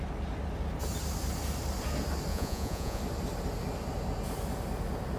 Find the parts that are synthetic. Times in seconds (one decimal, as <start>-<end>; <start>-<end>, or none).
2.3-3.0